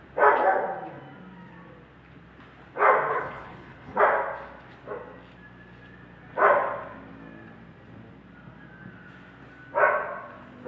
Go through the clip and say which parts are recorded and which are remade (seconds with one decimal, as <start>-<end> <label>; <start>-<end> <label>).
0.0-3.1 recorded; 3.1-4.0 remade; 4.0-10.7 recorded